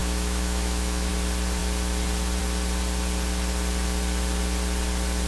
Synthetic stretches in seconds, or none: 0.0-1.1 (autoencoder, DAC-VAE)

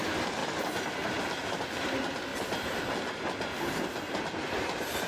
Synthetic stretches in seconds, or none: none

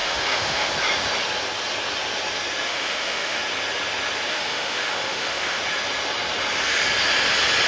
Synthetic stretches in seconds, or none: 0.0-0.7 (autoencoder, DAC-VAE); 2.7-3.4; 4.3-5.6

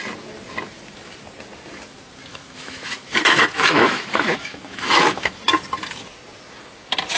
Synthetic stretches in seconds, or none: 2.3-5.3 (autoencoder, DAC-VAE)

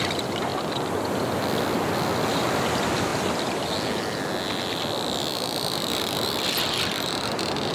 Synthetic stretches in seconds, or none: none

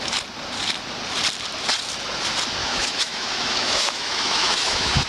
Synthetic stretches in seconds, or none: 2.6-5.1 (autoencoder, DAC-VAE)

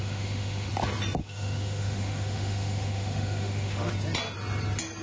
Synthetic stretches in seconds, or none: 0.0-0.7 (autoencoder, DAC-VAE); 1.2-3.9

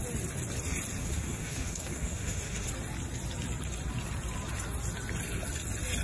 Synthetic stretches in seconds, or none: 1.0-2.7 (autoencoder, DAC-VAE)